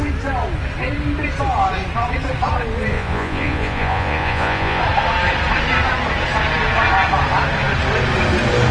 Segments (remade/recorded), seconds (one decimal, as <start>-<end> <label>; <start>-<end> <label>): 0.0-2.9 recorded; 2.9-4.8 remade; 4.8-8.7 recorded